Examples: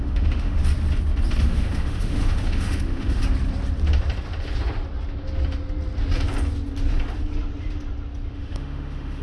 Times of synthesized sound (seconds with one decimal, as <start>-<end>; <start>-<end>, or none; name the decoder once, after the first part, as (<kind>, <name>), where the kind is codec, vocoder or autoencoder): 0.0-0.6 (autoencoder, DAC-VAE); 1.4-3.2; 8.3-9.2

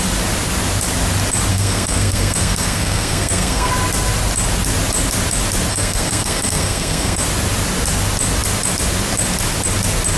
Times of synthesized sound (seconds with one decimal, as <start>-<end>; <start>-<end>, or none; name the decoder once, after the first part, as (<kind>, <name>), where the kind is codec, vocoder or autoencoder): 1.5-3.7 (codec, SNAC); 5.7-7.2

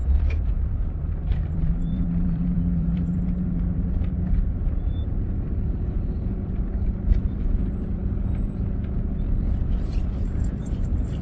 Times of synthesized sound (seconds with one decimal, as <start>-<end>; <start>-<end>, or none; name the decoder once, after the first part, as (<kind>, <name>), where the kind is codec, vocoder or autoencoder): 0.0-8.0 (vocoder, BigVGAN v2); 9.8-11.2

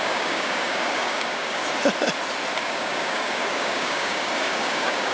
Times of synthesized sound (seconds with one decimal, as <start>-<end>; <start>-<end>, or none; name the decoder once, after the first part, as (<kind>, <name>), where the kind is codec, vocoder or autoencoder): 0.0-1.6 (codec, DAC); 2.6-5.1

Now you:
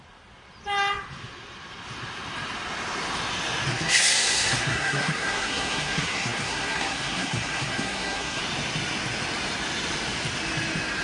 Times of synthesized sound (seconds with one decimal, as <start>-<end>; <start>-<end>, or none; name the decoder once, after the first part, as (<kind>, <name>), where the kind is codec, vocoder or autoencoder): 3.7-8.4 (codec, SNAC)

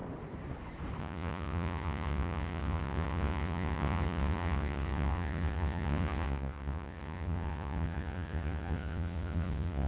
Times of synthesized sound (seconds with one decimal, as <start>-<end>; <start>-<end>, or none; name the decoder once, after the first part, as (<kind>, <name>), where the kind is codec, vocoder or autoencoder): 1.0-9.9 (vocoder, Vocos)